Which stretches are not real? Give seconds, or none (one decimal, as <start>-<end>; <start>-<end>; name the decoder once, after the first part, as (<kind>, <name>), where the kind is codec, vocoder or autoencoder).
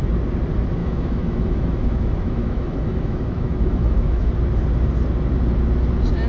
0.8-4.3 (autoencoder, DAC-VAE)